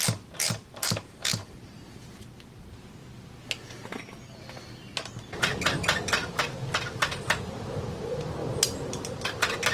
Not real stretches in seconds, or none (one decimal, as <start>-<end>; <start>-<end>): 0.0-1.4; 2.6-3.0; 5.4-9.7